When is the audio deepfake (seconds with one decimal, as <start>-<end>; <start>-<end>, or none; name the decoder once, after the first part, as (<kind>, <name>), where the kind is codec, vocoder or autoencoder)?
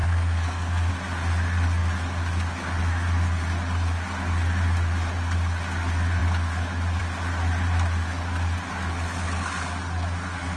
0.0-0.9 (codec, SNAC)